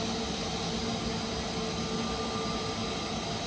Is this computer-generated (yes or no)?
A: no